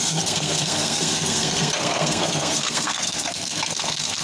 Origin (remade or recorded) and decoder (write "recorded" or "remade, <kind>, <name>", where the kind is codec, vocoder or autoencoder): remade, codec, SNAC